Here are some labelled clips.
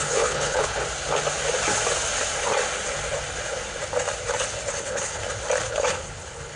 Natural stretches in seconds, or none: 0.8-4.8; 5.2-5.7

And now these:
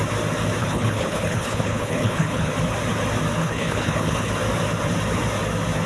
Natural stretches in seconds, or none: 0.0-0.6; 2.5-3.4; 4.3-5.9

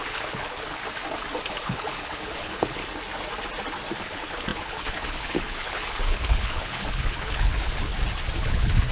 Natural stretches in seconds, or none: 0.8-1.5; 2.8-4.0; 7.9-8.4

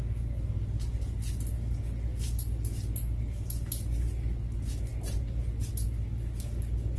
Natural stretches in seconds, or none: 0.0-7.0

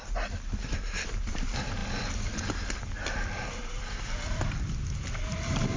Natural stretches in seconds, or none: 0.0-5.8

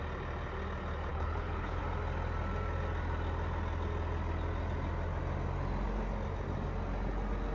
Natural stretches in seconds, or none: 0.0-1.1; 1.8-7.5

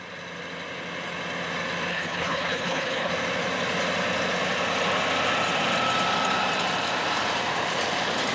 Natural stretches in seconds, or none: 0.0-1.9; 3.1-8.3